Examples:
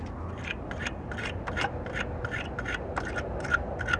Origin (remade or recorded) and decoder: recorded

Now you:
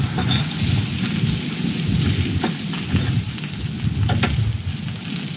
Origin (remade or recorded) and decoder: recorded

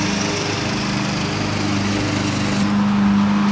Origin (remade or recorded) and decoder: recorded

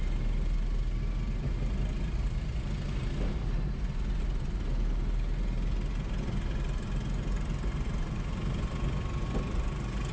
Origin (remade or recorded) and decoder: recorded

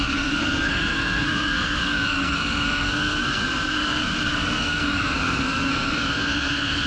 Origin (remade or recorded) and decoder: remade, codec, SNAC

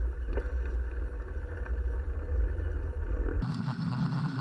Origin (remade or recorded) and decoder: recorded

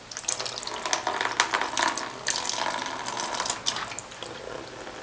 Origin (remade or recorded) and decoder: recorded